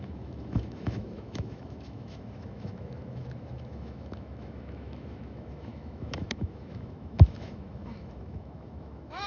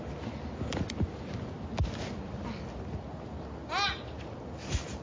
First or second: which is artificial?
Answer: first